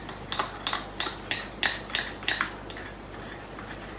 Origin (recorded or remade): recorded